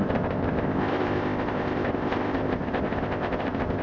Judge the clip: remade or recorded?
remade